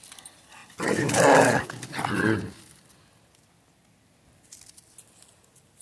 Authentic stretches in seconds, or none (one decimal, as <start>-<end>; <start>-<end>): 0.0-5.8